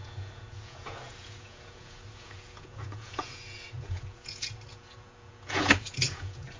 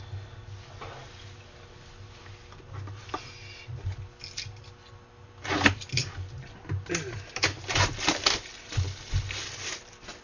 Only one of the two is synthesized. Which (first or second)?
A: first